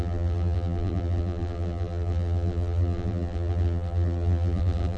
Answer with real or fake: fake